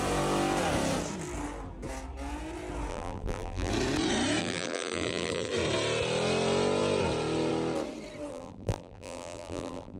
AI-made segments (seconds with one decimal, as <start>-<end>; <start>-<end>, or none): 2.9-3.7; 4.4-5.5; 8.3-10.0